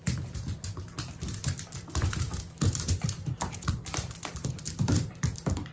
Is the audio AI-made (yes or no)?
yes